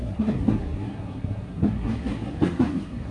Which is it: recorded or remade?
remade